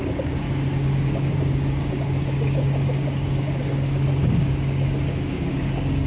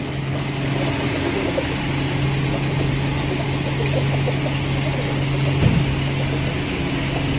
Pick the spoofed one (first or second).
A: first